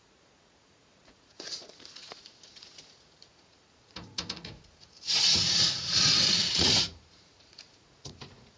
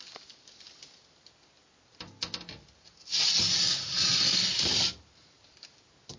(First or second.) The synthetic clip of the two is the first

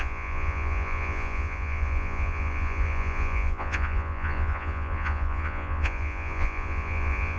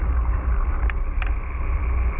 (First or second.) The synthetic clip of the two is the first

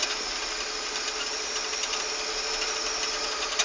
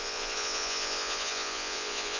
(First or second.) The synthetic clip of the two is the second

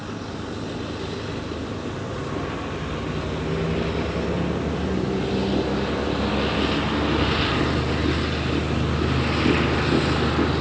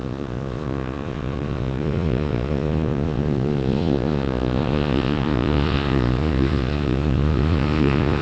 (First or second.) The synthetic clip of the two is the second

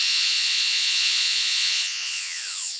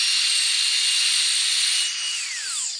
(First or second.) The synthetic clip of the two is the first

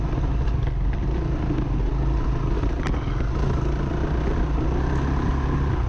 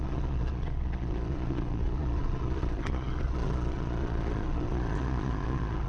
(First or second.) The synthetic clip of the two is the second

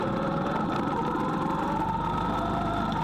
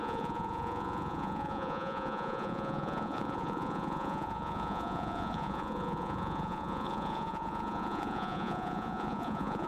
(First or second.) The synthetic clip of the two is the second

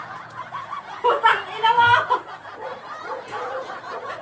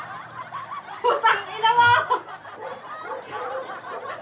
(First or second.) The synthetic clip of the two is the first